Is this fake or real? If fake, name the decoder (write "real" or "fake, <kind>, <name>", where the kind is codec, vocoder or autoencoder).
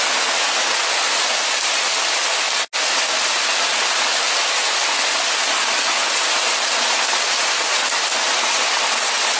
real